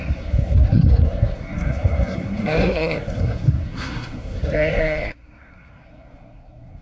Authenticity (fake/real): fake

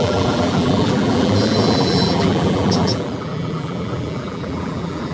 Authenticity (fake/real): fake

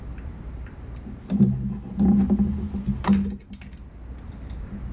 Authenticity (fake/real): real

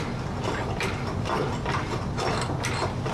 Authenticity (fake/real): real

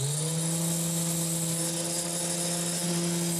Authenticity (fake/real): real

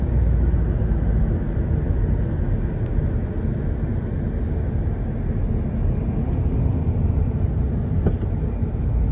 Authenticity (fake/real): real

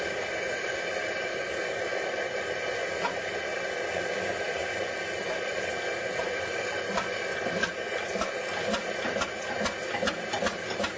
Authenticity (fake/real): real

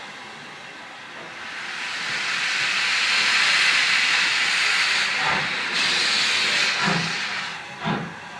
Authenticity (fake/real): real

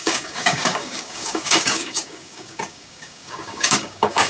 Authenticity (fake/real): fake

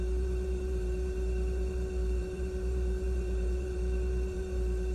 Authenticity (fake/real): fake